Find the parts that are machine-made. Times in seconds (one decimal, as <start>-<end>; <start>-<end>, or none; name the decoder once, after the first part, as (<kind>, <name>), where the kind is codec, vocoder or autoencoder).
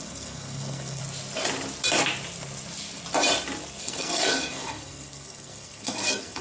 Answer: 0.0-1.0 (codec, SNAC); 3.8-6.4